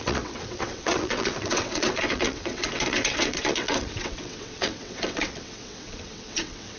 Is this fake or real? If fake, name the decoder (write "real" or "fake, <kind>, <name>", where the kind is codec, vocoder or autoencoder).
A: fake, vocoder, WaveNeXt